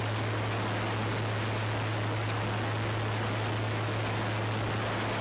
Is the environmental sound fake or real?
real